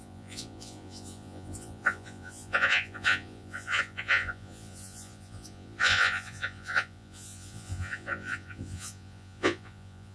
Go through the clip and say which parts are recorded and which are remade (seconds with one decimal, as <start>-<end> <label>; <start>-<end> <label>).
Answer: 0.0-10.1 remade